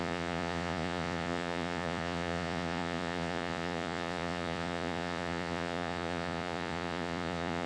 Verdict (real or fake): fake